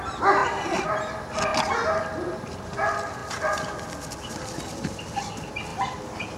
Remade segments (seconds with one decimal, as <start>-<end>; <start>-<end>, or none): none